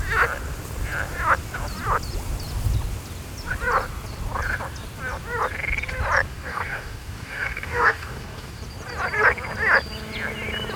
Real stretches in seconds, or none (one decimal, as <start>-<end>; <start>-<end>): 0.0-6.3; 8.6-10.8